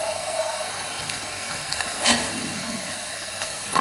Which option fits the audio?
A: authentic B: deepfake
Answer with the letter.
B